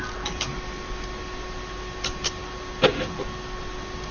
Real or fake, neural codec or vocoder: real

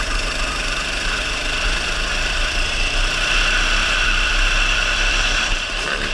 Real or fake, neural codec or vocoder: fake, vocoder, BigVGAN v2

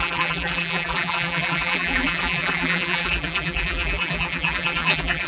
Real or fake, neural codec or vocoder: fake, vocoder, BigVGAN v2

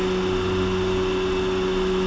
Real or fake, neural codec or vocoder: real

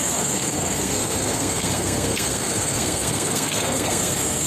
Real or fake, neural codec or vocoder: fake, codec, SNAC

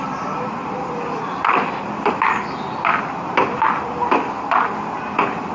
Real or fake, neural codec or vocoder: real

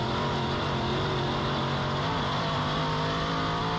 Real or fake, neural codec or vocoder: fake, vocoder, BigVGAN v2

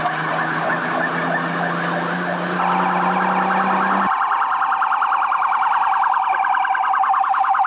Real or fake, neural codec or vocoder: real